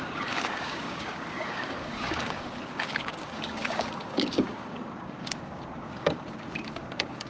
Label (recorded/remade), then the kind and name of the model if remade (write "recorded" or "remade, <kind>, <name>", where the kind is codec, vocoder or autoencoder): remade, codec, DAC